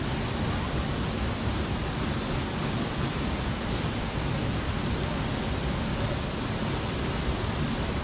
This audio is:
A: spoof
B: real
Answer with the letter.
B